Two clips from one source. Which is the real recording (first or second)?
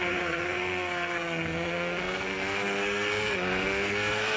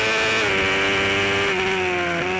second